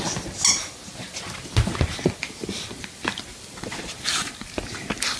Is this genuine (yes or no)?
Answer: yes